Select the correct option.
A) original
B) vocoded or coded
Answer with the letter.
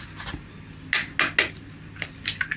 A